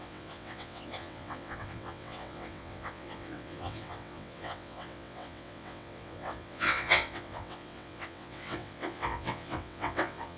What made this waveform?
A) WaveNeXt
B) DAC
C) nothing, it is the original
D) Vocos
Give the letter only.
A